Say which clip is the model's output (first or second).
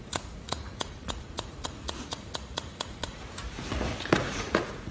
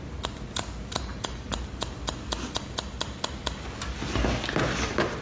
first